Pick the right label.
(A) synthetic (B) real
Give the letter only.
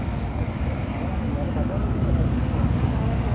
A